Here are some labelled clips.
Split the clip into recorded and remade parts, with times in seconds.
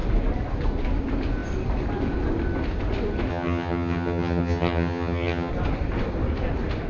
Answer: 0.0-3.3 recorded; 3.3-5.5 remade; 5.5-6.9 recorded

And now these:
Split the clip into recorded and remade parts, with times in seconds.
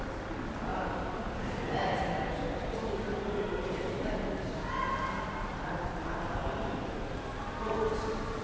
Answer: 0.0-8.4 recorded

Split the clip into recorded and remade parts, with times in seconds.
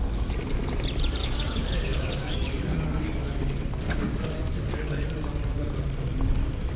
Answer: 0.0-1.2 recorded; 1.2-5.3 remade; 5.3-6.8 recorded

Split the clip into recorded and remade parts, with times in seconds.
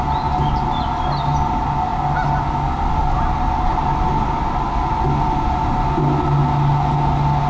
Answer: 0.0-7.5 recorded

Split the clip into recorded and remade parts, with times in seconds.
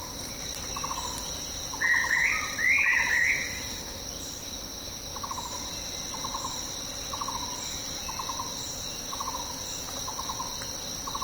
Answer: 0.0-3.5 recorded; 3.5-4.0 remade; 4.0-11.2 recorded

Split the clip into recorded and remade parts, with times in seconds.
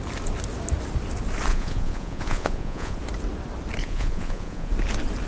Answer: 0.0-1.5 recorded; 1.5-3.0 remade; 3.0-3.8 recorded; 3.8-4.7 remade; 4.7-5.3 recorded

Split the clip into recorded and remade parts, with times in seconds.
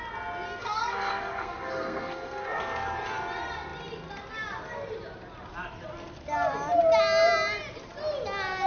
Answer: 0.0-0.6 recorded; 0.6-2.6 remade; 2.6-8.7 recorded